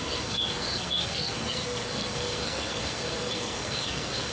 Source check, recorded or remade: remade